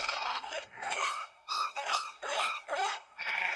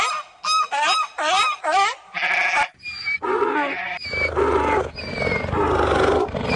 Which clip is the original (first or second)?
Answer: second